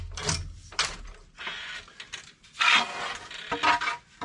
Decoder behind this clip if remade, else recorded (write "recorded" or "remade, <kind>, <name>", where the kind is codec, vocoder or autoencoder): recorded